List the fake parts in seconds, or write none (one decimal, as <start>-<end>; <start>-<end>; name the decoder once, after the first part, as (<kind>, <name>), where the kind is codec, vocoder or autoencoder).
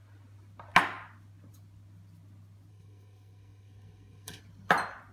2.7-4.4 (codec, SNAC)